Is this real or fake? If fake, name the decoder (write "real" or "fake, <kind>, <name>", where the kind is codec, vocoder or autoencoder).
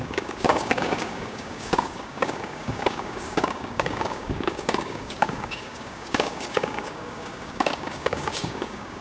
fake, codec, DAC